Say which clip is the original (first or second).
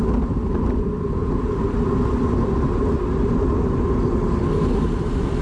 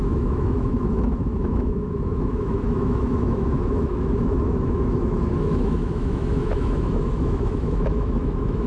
first